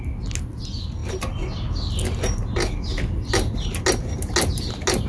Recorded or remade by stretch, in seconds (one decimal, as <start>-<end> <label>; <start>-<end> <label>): 0.0-5.1 recorded